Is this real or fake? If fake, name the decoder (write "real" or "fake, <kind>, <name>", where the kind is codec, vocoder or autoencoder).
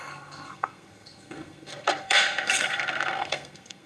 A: fake, codec, SNAC